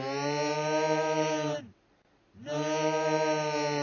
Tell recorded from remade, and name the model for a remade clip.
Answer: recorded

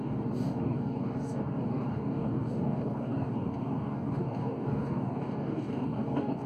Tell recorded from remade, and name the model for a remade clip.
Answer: remade, codec, DAC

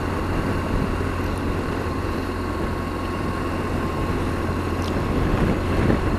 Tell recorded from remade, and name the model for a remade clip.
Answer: recorded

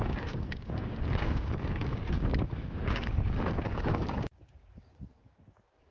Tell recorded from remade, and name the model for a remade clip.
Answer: remade, codec, DAC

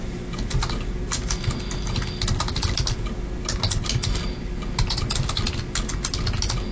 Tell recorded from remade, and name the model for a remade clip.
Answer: recorded